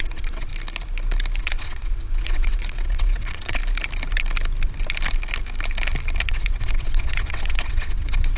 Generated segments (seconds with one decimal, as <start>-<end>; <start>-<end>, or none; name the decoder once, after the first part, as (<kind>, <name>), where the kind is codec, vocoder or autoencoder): 0.0-0.5 (vocoder, WaveNeXt); 1.4-3.6; 6.3-8.4

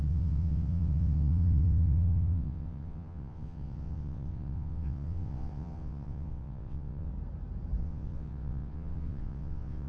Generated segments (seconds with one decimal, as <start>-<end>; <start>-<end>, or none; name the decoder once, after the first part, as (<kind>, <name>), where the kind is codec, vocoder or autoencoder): 0.0-7.1 (vocoder, WaveNeXt); 7.8-9.9

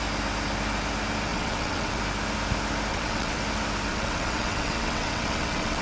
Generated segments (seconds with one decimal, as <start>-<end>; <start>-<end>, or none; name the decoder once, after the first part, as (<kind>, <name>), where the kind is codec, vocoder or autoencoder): 1.3-2.0 (vocoder, WaveNeXt); 2.9-3.4; 3.9-5.8

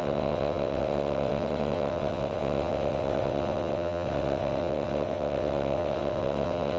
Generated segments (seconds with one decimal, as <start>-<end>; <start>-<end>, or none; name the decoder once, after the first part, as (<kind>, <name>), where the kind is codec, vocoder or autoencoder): 0.0-6.8 (vocoder, WaveNeXt)

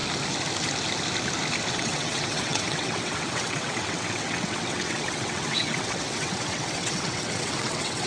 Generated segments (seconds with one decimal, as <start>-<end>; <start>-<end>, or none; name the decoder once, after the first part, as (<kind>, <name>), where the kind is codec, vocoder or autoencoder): 1.7-8.1 (vocoder, WaveNeXt)

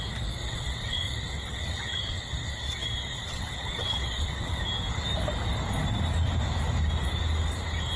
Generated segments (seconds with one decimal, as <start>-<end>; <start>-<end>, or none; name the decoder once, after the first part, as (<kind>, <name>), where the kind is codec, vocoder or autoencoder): 0.4-4.6 (vocoder, WaveNeXt)

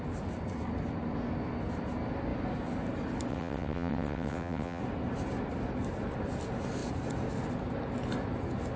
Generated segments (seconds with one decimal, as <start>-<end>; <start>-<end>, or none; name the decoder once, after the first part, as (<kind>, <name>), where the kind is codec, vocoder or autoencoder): 3.3-4.8 (vocoder, WaveNeXt)

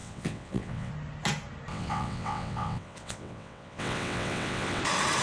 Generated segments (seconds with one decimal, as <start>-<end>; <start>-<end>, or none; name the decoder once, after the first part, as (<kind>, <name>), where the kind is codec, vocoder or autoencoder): 0.0-0.9 (vocoder, WaveNeXt); 1.7-4.8